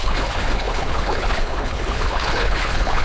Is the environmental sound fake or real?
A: fake